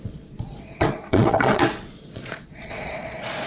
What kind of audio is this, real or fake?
fake